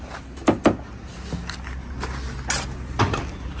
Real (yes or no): yes